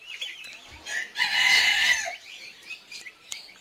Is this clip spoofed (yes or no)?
yes